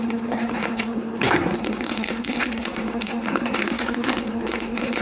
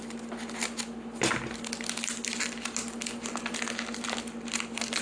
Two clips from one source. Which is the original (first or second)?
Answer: second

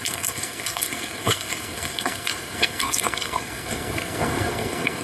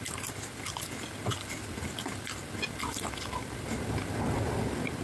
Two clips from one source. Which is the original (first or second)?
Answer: second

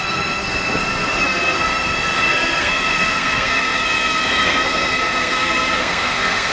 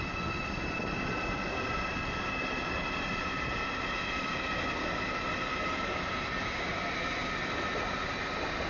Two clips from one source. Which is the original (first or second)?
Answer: second